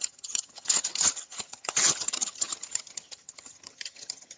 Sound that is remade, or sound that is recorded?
remade